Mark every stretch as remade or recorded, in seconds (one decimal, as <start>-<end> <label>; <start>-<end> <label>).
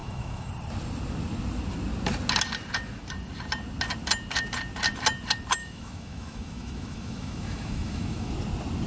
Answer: 0.0-0.5 remade; 0.5-5.6 recorded; 5.6-8.3 remade; 8.3-8.9 recorded